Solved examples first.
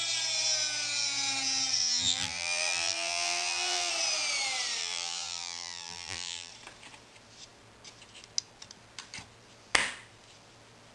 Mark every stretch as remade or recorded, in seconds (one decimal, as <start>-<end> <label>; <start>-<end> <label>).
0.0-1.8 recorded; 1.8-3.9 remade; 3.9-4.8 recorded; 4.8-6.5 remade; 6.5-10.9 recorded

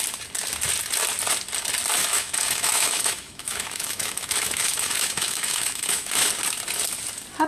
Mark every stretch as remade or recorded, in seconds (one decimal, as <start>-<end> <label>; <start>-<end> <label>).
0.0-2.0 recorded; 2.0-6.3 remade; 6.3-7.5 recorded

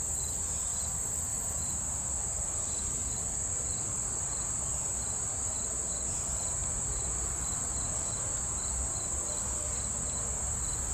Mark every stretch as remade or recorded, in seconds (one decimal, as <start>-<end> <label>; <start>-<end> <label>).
0.0-1.3 recorded; 1.3-3.1 remade; 3.1-6.6 recorded; 6.6-8.6 remade; 8.6-10.9 recorded

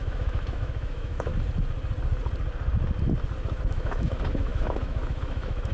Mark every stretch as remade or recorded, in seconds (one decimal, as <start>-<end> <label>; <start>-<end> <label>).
0.0-1.3 remade; 1.3-3.7 recorded; 3.7-5.7 remade

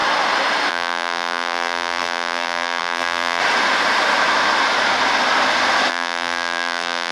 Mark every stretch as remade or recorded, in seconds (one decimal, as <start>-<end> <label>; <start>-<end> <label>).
0.0-0.7 recorded; 0.7-3.4 remade; 3.4-5.9 recorded; 5.9-7.1 remade

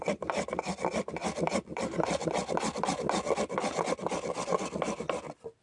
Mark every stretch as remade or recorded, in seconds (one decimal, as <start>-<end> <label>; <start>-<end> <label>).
0.0-1.2 recorded; 1.2-2.8 remade; 2.8-5.6 recorded

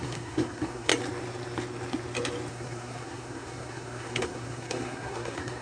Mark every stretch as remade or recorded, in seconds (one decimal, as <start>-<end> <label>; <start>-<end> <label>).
0.0-0.9 remade; 0.9-2.5 recorded; 2.5-5.6 remade